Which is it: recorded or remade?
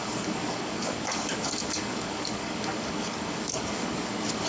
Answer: remade